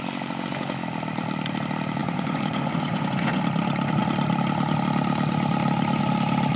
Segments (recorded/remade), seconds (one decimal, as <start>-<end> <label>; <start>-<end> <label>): 0.0-2.0 recorded; 2.0-3.4 remade; 3.4-6.6 recorded